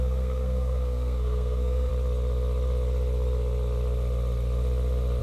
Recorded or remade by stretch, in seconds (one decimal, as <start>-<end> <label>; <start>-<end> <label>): 0.0-1.9 remade; 1.9-5.2 recorded